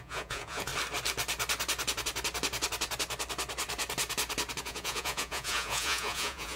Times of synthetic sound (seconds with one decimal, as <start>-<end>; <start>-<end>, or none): 0.0-0.7; 4.6-6.6